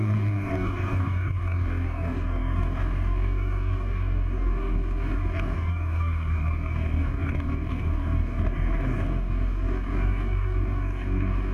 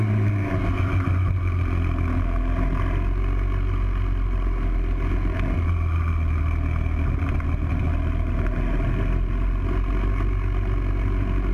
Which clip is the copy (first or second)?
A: first